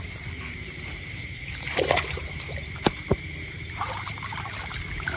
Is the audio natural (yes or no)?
no